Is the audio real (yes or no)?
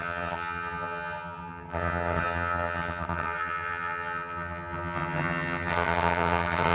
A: no